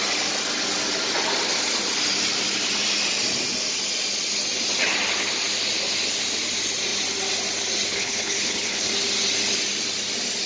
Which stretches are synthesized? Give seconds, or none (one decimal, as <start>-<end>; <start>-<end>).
7.9-8.9